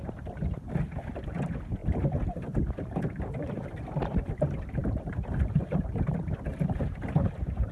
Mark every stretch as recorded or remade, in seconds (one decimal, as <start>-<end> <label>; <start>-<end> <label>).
0.0-1.8 recorded; 1.8-6.1 remade; 6.1-6.5 recorded; 6.5-7.7 remade